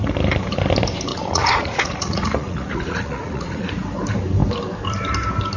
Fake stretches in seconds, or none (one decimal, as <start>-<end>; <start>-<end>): 1.1-3.7